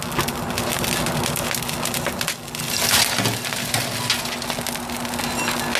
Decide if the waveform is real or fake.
real